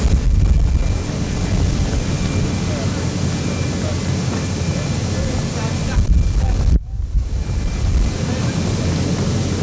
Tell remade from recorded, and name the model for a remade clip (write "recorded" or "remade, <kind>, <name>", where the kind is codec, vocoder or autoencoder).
recorded